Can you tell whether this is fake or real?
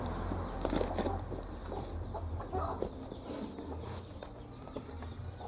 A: real